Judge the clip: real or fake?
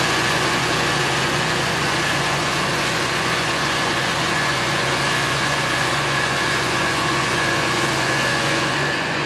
fake